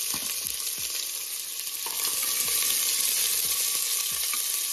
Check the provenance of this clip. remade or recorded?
recorded